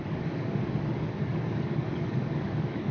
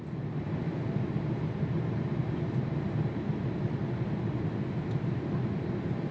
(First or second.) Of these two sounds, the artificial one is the first